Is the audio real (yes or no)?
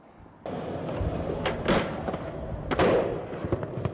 yes